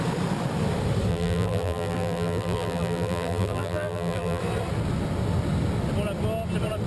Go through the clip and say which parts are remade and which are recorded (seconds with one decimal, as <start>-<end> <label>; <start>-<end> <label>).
0.0-1.1 recorded; 1.1-4.4 remade; 4.4-6.9 recorded

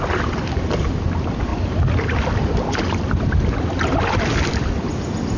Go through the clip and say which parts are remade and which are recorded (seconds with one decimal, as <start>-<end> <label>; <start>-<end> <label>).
0.0-5.4 remade

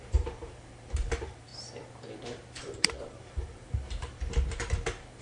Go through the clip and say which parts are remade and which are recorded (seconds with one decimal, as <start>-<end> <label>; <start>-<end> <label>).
0.0-1.5 remade; 1.5-2.6 recorded; 2.6-5.2 remade